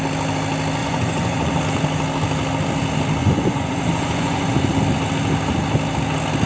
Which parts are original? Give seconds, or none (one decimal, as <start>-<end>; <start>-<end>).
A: 0.0-0.8; 1.6-3.2; 4.5-6.5